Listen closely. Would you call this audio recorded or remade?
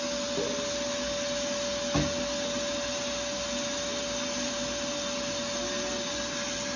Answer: recorded